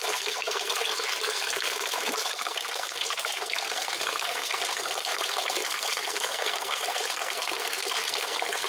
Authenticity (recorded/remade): remade